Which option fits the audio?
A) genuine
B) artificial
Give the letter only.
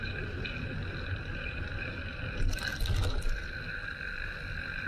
A